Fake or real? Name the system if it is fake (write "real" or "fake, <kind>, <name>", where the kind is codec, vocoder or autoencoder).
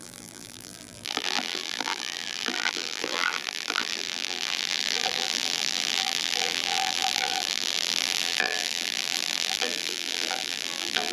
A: fake, vocoder, BigVGAN v2